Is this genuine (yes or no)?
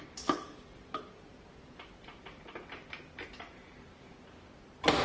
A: yes